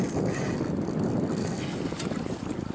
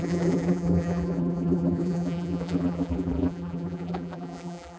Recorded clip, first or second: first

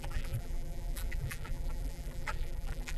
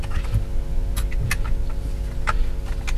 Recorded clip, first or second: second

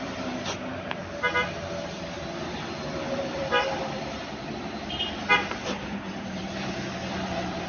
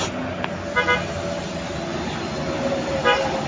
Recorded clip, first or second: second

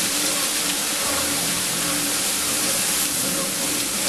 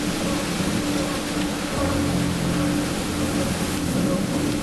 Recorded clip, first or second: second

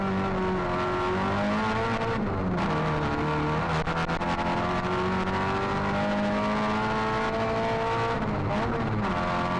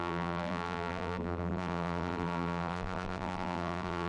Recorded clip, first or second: first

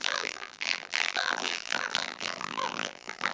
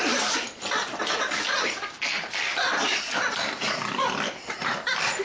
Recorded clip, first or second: second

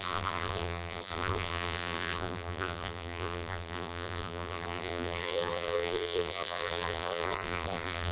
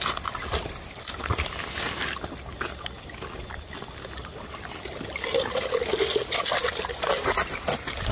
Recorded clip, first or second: second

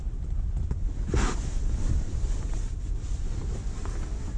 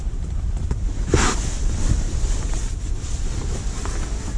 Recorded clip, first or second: first